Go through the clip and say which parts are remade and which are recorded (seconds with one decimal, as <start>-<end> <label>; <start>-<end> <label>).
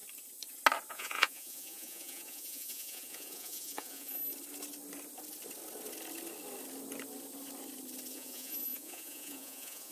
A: 0.0-0.9 recorded; 0.9-4.2 remade; 4.2-8.1 recorded; 8.1-9.9 remade